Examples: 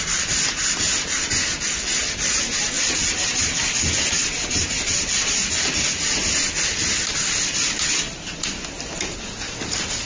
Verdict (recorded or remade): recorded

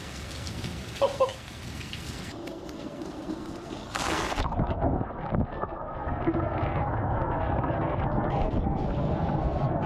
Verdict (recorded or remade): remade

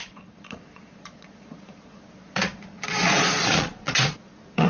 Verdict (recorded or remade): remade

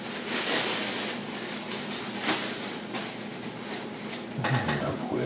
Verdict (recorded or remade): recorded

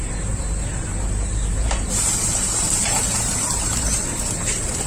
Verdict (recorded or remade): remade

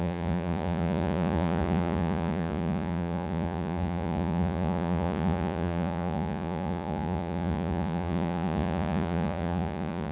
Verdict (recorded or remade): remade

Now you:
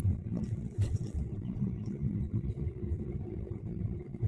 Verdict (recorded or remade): remade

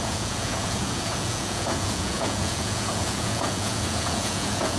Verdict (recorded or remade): remade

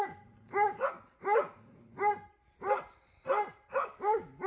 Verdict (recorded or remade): recorded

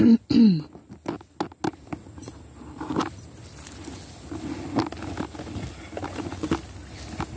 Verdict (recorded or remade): recorded